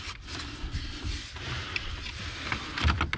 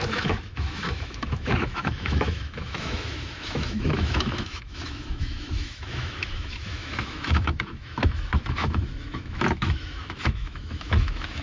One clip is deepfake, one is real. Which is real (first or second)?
first